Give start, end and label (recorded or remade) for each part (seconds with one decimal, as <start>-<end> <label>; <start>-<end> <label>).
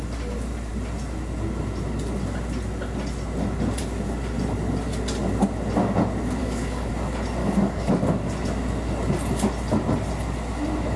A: 0.0-6.4 recorded; 6.4-6.9 remade; 6.9-7.4 recorded; 7.4-7.9 remade; 7.9-11.0 recorded